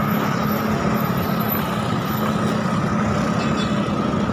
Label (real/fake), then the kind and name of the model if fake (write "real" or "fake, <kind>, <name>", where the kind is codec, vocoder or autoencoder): real